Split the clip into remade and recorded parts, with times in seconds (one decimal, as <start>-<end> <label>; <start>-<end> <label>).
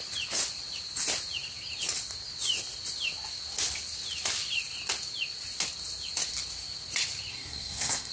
0.0-7.3 recorded; 7.3-8.1 remade